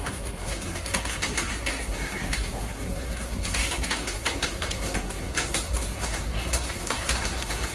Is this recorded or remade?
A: remade